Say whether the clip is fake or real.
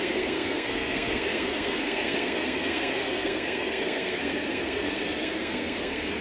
fake